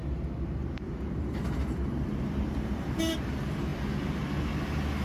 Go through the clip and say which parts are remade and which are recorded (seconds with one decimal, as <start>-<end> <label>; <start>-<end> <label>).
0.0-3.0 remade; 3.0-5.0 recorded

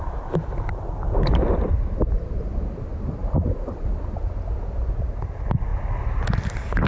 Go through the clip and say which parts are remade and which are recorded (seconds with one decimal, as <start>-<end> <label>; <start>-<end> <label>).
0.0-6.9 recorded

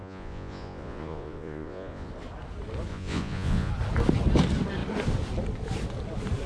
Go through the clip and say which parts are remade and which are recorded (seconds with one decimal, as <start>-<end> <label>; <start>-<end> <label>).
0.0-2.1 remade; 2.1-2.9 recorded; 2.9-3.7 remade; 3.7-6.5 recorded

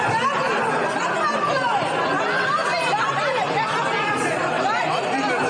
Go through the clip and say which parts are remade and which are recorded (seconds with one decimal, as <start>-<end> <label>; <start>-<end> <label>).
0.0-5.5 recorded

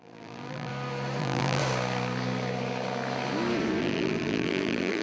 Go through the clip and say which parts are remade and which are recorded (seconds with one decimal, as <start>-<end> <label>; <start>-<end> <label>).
0.0-0.7 remade; 0.7-1.2 recorded; 1.2-1.6 remade; 1.6-3.8 recorded; 3.8-5.0 remade

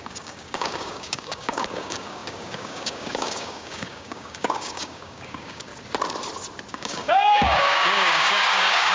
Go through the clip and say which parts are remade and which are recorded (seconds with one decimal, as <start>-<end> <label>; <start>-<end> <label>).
0.0-5.7 remade; 5.7-6.7 recorded; 6.7-8.9 remade